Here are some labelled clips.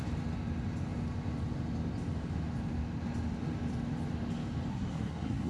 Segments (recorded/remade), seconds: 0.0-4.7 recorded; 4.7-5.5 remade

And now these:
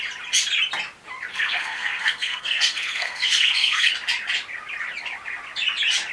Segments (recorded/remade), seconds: 0.0-1.3 recorded; 1.3-3.9 remade; 3.9-6.1 recorded

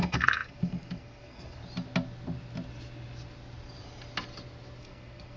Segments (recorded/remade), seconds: 0.0-1.6 remade; 1.6-4.8 recorded; 4.8-5.4 remade